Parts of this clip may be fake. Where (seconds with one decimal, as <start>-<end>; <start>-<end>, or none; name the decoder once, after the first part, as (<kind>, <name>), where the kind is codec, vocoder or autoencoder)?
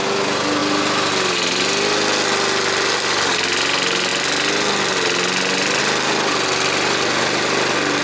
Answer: none